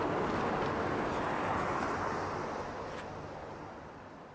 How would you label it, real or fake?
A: real